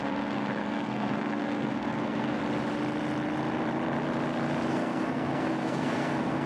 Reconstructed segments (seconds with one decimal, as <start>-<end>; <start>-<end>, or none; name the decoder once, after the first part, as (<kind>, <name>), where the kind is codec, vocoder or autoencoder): 0.0-2.4 (codec, SNAC); 4.7-6.5